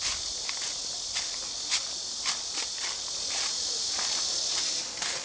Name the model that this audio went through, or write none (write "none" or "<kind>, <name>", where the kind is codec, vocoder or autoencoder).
none